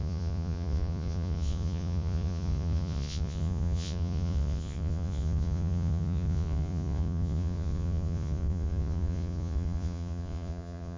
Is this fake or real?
fake